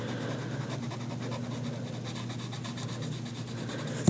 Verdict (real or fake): real